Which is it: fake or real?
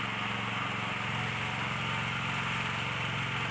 real